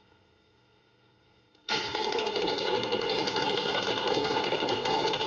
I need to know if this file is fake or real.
fake